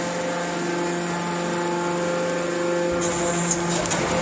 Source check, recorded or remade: recorded